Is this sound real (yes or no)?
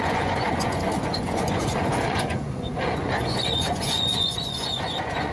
no